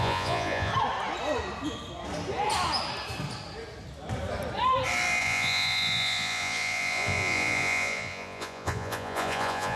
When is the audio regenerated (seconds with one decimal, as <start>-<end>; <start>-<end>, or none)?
0.0-0.7; 5.2-9.8